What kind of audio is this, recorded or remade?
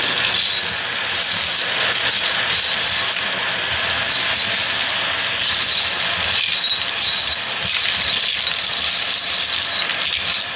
recorded